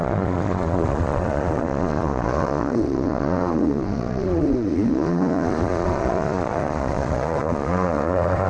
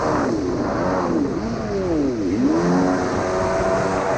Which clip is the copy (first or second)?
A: first